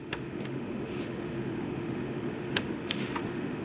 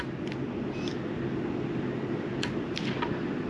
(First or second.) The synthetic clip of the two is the first